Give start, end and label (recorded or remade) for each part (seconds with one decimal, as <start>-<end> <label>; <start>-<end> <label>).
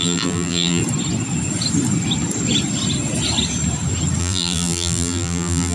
0.0-0.8 remade; 0.8-4.2 recorded; 4.2-5.7 remade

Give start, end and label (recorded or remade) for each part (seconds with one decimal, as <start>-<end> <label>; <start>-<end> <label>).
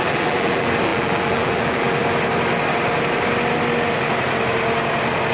0.0-2.0 remade; 2.0-5.3 recorded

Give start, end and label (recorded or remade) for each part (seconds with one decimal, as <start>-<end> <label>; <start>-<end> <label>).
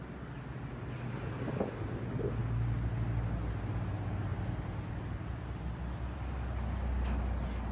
0.0-4.3 recorded; 4.3-4.9 remade; 4.9-7.7 recorded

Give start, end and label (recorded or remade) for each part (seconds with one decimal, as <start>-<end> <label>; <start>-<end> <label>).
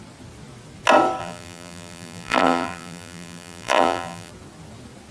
0.0-1.2 recorded; 1.2-4.3 remade; 4.3-5.1 recorded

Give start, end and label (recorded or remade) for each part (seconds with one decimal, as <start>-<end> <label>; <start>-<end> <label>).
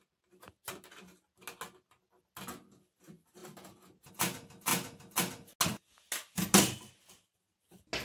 0.0-8.0 recorded